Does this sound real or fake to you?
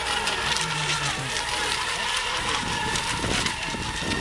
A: real